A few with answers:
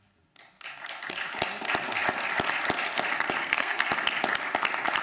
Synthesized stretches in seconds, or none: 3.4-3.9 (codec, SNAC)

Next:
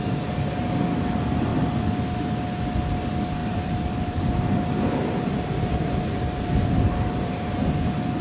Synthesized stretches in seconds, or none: 3.4-7.7 (vocoder, BigVGAN v2)

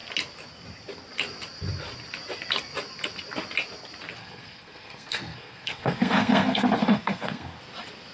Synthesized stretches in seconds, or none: 4.2-7.6 (codec, SNAC)

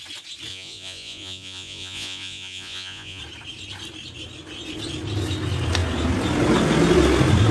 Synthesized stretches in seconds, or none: 0.5-3.2 (vocoder, Vocos)

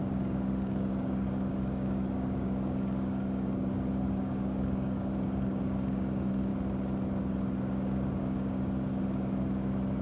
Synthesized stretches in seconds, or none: 0.0-6.5 (codec, DAC); 7.6-10.0

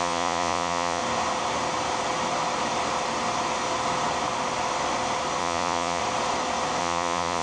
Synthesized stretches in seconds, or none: 0.0-1.0 (vocoder, Vocos); 5.4-6.0; 6.8-7.4

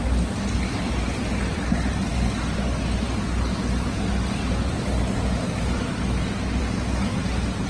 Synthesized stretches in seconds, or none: none

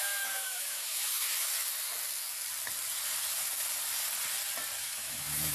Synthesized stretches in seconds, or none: 0.0-1.5 (autoencoder, DAC-VAE); 4.8-5.5